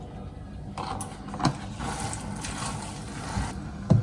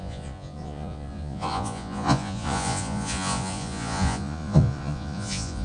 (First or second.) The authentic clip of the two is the first